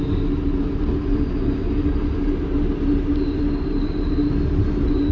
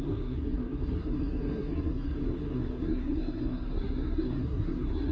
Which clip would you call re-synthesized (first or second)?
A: second